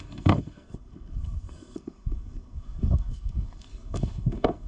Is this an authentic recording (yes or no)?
no